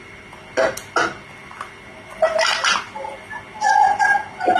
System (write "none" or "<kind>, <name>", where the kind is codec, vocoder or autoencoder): none